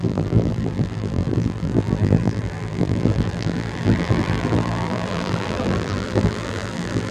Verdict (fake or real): fake